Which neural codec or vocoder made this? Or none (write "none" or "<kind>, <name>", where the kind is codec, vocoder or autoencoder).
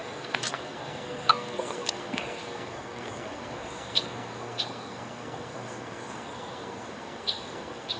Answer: codec, SNAC